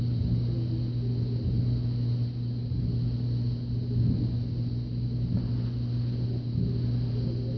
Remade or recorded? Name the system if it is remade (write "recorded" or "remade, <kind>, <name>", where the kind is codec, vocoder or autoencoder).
recorded